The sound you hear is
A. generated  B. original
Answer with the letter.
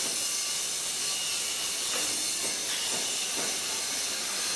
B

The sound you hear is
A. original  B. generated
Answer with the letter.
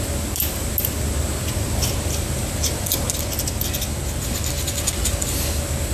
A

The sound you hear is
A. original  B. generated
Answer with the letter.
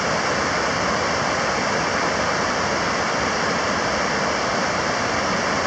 B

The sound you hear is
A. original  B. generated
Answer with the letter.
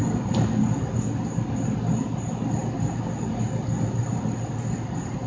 A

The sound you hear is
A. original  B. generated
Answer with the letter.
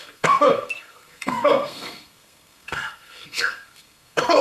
B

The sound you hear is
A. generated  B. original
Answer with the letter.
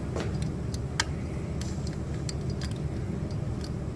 B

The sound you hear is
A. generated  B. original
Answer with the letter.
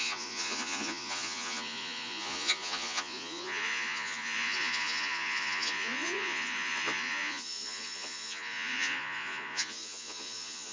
A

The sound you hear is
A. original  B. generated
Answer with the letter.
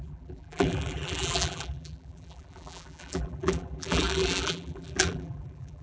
B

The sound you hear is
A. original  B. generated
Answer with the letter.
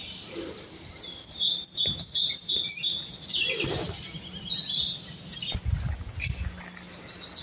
A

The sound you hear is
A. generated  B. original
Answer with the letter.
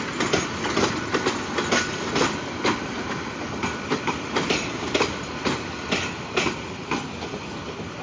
B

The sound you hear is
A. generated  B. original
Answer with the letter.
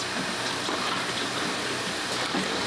B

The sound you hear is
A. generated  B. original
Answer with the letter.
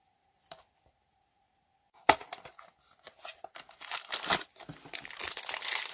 B